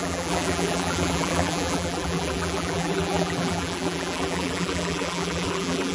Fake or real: fake